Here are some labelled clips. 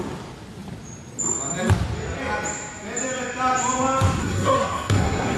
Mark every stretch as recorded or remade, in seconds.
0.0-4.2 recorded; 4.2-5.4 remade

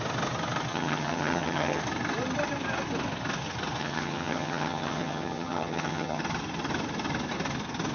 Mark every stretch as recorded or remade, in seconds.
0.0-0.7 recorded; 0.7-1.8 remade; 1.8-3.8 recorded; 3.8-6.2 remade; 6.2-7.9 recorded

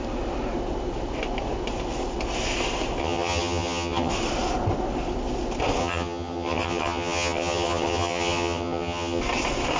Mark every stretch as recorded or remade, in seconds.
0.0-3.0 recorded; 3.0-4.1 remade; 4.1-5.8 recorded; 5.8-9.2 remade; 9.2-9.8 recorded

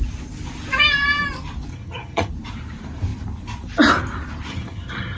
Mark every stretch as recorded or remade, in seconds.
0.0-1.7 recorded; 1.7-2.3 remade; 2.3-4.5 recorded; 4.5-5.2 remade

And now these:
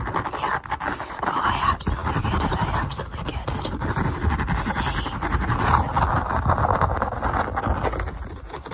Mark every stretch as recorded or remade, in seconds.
0.0-8.7 recorded

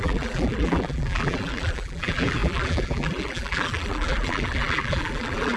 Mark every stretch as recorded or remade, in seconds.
0.0-5.6 remade